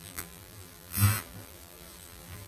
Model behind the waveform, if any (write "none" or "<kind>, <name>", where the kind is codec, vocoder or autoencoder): vocoder, BigVGAN v2